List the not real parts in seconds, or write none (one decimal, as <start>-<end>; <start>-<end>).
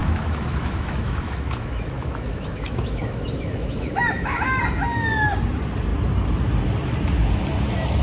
0.0-4.6